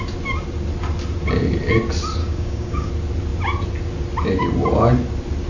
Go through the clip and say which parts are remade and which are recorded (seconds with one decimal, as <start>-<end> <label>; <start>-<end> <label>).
0.0-2.2 recorded; 2.2-2.9 remade; 2.9-5.5 recorded